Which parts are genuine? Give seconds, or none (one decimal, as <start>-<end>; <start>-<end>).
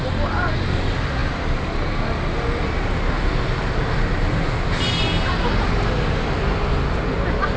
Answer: 0.0-7.6